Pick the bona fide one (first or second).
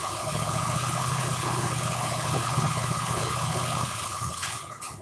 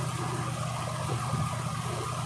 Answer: second